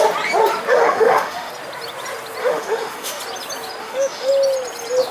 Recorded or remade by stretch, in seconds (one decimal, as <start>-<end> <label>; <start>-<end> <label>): 0.0-0.7 recorded; 0.7-1.5 remade; 1.5-2.4 recorded; 2.4-3.2 remade; 3.2-3.8 recorded; 3.8-4.3 remade; 4.3-5.1 recorded